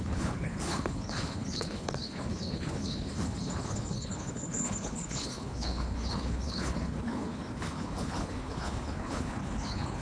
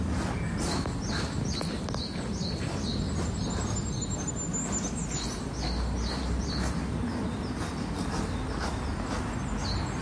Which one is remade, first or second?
first